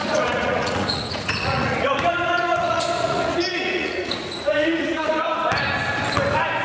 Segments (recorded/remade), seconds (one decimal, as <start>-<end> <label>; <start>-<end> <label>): 0.0-2.1 remade; 2.1-2.6 recorded; 2.6-5.1 remade; 5.1-6.6 recorded